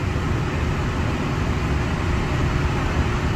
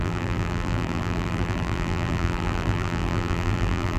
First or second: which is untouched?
first